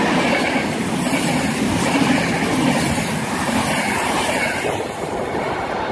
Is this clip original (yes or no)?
yes